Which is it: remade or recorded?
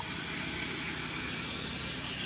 recorded